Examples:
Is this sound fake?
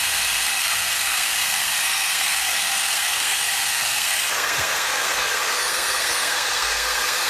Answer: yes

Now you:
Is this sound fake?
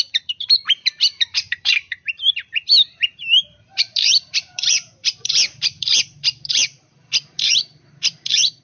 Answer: yes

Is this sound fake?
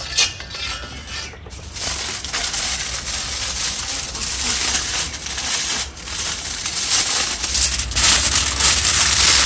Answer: no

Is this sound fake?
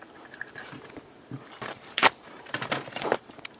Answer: yes